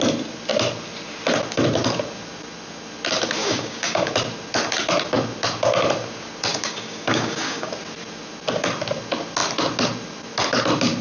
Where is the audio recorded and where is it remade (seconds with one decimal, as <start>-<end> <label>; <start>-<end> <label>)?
0.0-3.4 recorded; 3.4-4.1 remade; 4.1-6.5 recorded; 6.5-7.7 remade; 7.7-11.0 recorded